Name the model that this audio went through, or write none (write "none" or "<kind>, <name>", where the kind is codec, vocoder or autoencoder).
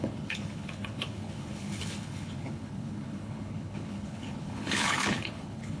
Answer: codec, HILCodec